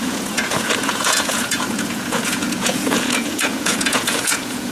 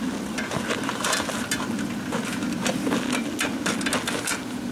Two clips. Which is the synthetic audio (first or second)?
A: first